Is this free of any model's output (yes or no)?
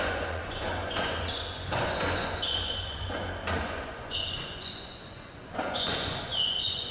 no